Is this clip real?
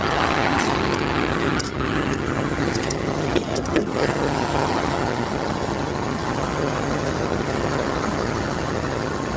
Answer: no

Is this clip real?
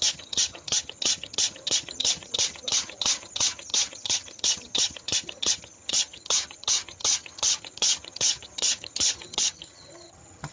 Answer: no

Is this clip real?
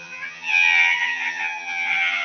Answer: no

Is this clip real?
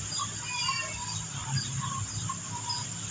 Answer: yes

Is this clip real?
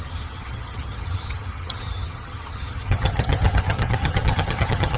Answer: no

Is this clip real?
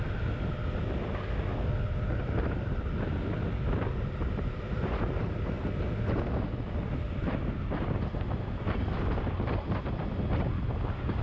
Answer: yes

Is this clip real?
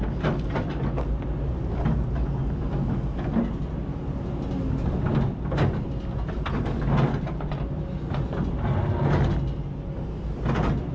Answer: yes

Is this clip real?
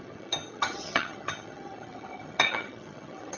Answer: no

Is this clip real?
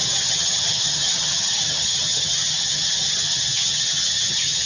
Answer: no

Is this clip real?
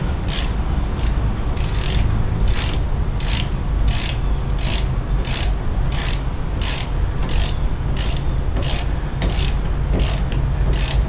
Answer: yes